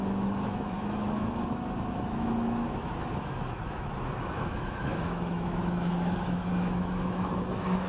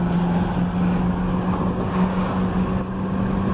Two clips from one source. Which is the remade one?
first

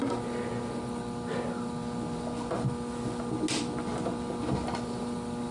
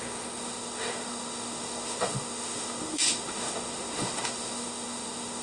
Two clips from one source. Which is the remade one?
second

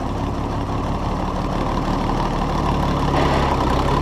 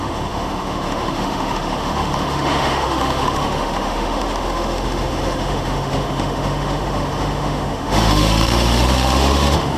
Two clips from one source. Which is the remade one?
second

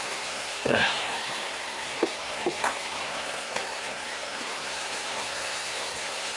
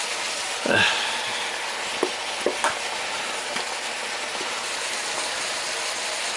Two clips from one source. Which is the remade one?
first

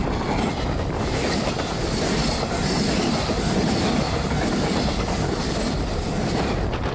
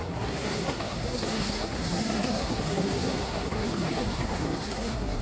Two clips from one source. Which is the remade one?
second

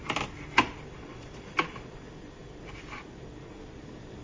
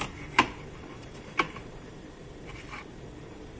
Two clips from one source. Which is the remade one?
second